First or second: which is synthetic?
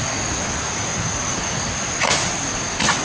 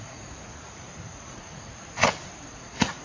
second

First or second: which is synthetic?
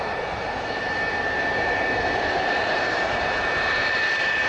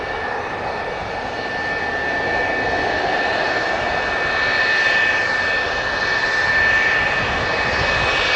first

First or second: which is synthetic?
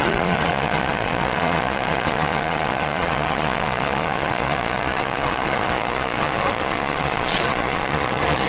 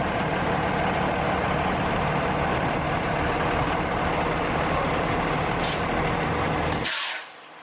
first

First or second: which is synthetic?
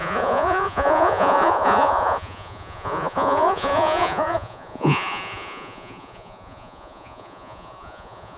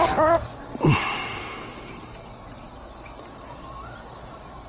first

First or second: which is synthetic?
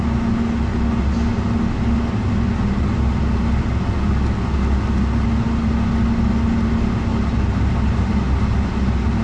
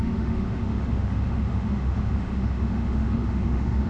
second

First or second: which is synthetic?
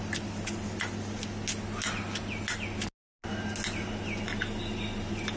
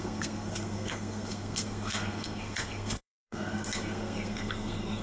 second